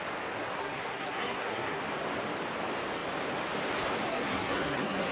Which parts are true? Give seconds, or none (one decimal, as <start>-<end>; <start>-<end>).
0.0-0.6; 1.8-4.1